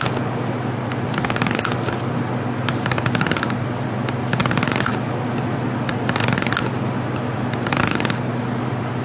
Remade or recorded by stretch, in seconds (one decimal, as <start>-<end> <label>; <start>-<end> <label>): 0.0-9.0 recorded